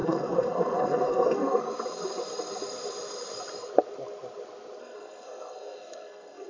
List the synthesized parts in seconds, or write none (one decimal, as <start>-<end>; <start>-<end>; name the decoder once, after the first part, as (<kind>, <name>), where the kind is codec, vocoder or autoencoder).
0.0-1.6 (codec, SNAC); 4.8-6.5